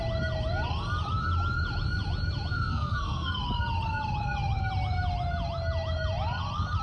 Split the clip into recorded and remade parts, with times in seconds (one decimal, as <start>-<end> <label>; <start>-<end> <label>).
0.0-2.5 recorded; 2.5-3.3 remade; 3.3-6.8 recorded